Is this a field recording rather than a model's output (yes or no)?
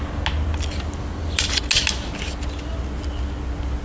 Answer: yes